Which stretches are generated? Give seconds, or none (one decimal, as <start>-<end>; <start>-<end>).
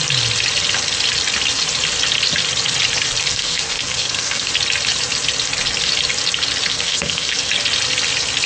3.3-4.5; 6.7-7.5